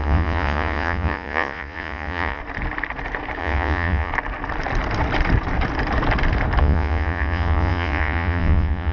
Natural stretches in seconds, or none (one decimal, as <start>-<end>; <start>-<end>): 2.4-3.4; 4.1-6.6